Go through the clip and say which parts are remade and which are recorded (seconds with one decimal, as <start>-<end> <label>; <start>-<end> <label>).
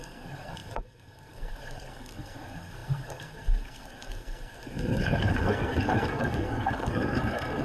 0.0-7.6 remade